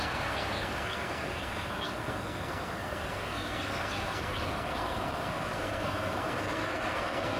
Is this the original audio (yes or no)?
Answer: no